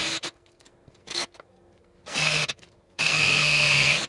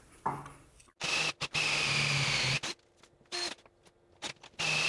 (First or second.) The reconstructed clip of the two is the first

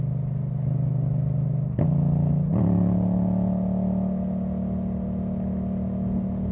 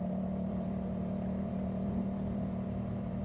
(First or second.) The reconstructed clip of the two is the second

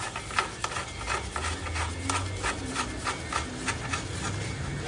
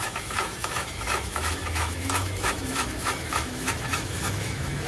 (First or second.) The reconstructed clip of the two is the second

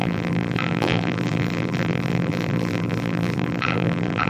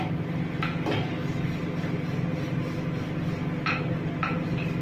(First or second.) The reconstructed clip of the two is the first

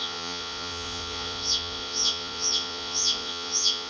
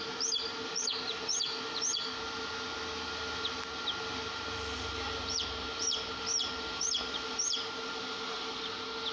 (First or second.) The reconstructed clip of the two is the first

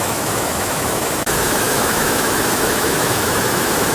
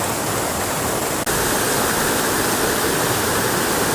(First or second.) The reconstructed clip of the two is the first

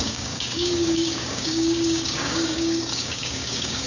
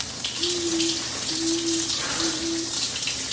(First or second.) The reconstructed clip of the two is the first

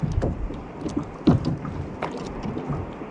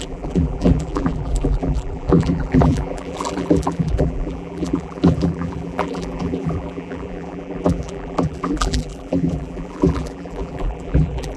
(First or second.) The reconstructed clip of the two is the second